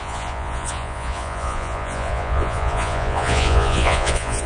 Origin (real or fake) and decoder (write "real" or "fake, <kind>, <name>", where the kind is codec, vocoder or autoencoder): fake, vocoder, Vocos